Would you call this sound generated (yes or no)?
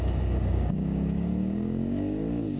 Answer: yes